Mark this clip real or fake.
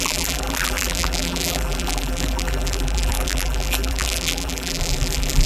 fake